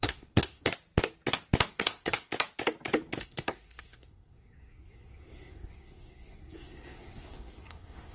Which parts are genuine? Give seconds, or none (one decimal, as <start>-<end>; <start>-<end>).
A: 0.7-1.7; 2.3-3.2